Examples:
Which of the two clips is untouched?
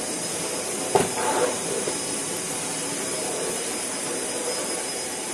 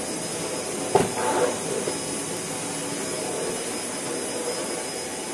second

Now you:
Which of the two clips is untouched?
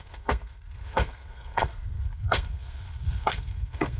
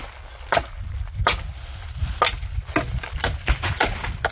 second